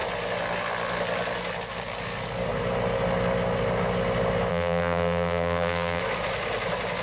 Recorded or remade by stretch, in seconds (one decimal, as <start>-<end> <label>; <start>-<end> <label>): 0.0-4.5 recorded; 4.5-6.0 remade; 6.0-7.0 recorded